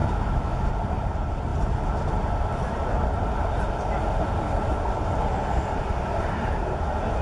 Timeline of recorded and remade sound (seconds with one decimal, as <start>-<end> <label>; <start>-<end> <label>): 0.0-0.7 remade; 0.7-7.2 recorded